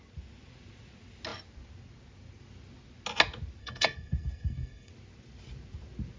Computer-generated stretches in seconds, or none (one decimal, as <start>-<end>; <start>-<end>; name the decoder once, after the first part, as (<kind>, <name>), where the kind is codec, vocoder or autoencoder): 3.6-4.9 (codec, SNAC)